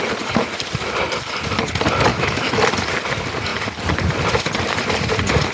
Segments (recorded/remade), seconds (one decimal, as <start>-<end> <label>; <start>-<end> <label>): 0.0-2.1 recorded; 2.1-2.6 remade; 2.6-5.5 recorded